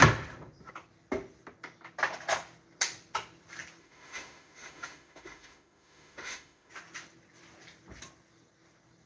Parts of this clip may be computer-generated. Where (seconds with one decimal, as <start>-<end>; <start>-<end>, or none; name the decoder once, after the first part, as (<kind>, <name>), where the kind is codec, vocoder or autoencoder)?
3.8-6.7 (autoencoder, DAC-VAE)

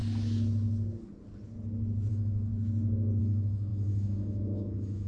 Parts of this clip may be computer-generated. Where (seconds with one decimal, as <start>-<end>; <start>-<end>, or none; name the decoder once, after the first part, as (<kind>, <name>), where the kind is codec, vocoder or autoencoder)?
2.1-2.5 (autoencoder, DAC-VAE); 3.2-5.1

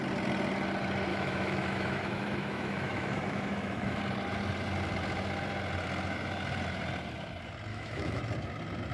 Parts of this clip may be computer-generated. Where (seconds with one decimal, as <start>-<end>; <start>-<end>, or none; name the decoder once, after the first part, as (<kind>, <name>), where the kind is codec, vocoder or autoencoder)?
1.1-4.0 (autoencoder, DAC-VAE); 7.7-8.2

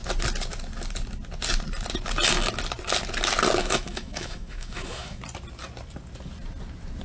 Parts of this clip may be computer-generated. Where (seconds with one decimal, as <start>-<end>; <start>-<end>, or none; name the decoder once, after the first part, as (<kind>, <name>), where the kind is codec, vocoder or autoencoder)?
3.6-5.2 (autoencoder, DAC-VAE)